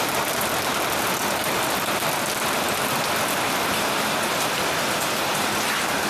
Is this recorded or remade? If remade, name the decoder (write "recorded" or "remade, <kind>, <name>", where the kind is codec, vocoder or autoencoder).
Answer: remade, vocoder, BigVGAN v2